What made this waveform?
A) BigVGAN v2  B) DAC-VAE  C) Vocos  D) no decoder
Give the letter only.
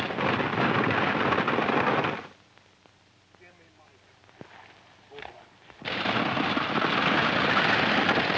D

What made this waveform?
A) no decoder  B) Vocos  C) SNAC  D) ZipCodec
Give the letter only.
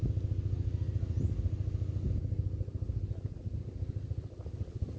A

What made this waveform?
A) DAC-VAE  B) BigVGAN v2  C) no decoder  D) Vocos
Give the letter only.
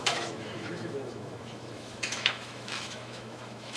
A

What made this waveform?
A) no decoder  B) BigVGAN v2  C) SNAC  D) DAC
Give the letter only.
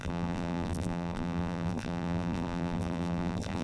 B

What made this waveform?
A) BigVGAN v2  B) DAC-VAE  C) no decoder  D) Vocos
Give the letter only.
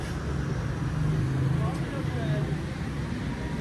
C